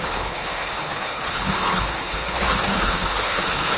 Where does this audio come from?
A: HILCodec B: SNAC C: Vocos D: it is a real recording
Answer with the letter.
A